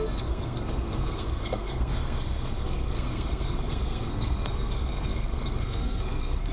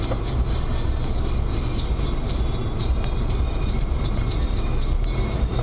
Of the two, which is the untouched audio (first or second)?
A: second